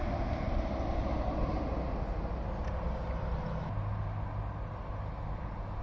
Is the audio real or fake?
real